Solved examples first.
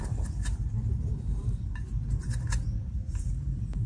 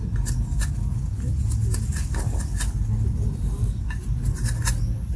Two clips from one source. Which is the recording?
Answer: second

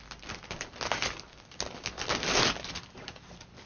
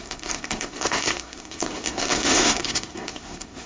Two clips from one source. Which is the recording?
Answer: first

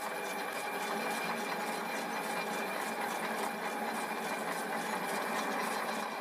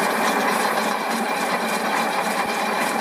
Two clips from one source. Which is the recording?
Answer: first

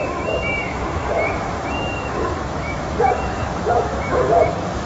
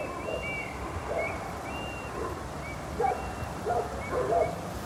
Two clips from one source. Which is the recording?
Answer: second